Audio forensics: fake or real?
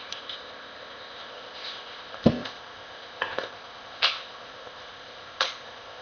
fake